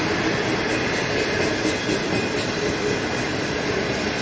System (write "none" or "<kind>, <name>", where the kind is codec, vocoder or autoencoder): none